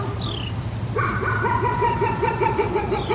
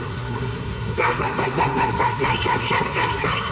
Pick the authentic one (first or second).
first